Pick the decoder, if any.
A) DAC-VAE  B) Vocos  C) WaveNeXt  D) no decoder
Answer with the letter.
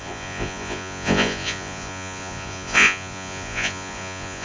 B